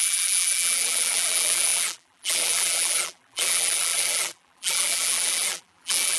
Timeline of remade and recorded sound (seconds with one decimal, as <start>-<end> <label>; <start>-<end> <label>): 0.0-6.2 remade